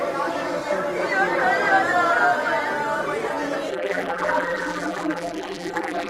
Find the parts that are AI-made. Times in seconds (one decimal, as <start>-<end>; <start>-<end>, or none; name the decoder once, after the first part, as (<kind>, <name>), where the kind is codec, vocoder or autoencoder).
3.7-6.1 (vocoder, BigVGAN v2)